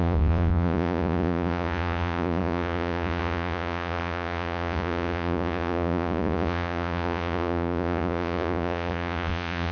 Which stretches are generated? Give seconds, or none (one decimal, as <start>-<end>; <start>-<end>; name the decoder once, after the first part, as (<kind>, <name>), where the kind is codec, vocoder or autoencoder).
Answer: 0.0-9.7 (vocoder, Vocos)